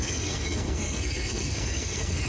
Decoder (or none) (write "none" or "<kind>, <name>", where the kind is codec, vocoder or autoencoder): codec, SNAC